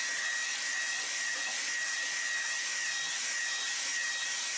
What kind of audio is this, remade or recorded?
recorded